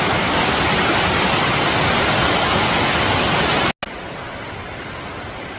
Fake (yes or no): no